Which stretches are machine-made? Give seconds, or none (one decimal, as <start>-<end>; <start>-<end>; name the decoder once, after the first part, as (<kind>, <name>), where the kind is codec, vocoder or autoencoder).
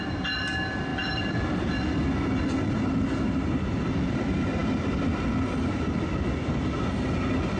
0.9-1.7 (vocoder, BigVGAN v2)